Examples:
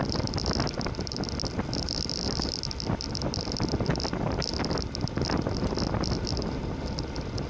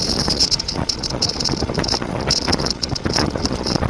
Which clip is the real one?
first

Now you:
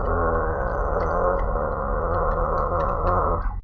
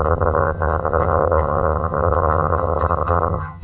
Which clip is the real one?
first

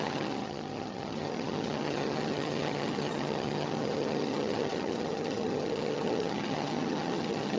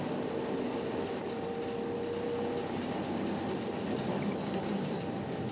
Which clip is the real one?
second